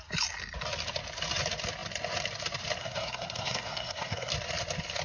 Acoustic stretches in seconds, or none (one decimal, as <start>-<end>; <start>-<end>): 0.0-2.8; 4.3-5.0